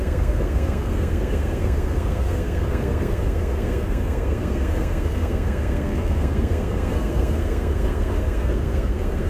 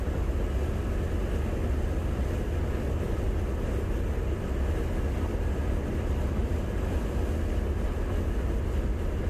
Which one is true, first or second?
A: second